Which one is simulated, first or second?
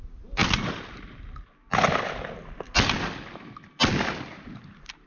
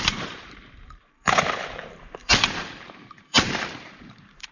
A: second